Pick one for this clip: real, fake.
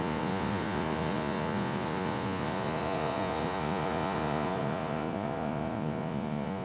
fake